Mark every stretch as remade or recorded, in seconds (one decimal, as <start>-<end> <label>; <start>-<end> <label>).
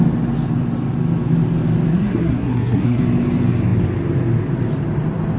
0.0-1.9 recorded; 1.9-3.0 remade; 3.0-5.4 recorded